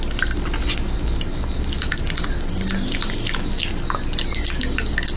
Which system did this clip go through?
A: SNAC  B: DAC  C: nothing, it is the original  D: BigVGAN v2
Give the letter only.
C